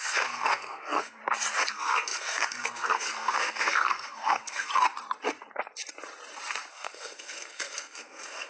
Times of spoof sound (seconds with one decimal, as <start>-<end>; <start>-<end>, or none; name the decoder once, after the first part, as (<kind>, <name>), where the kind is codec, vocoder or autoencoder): 0.0-1.2 (codec, SNAC); 1.7-4.7; 6.7-8.5